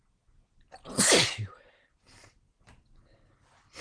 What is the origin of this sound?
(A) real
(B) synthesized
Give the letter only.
A